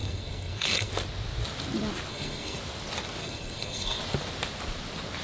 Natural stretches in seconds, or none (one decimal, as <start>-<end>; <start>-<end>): 0.9-2.1; 2.6-3.2; 4.0-5.2